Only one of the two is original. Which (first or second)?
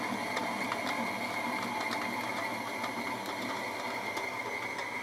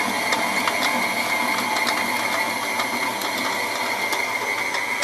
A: second